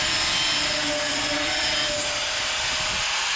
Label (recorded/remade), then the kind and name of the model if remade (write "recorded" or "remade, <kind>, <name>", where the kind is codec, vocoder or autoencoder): recorded